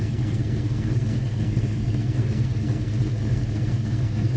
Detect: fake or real fake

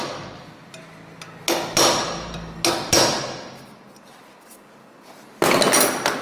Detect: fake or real real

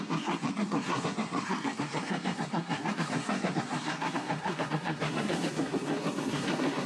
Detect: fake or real fake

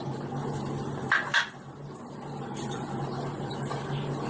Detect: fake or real real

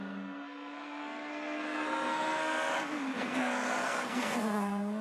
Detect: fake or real fake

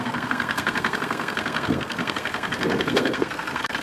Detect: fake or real fake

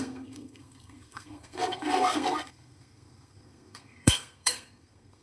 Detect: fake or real fake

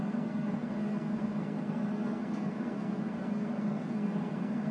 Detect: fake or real fake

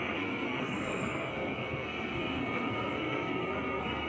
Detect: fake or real fake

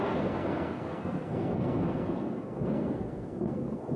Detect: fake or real fake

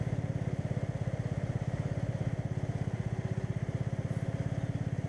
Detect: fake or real real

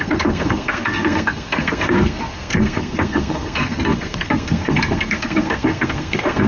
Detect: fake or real fake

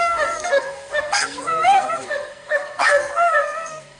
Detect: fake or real fake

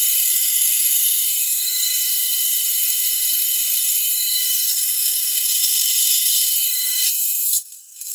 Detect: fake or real fake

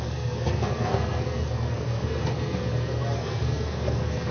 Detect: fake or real fake